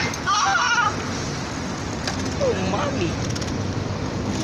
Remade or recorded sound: recorded